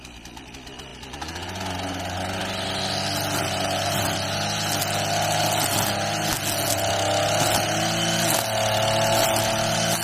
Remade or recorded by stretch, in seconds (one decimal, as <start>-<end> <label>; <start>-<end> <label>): 0.0-10.0 recorded